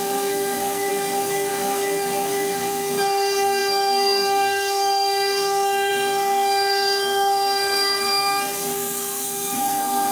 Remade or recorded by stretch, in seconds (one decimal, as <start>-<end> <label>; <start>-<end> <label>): 0.0-10.1 remade